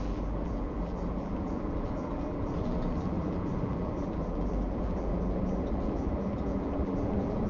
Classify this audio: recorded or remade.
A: remade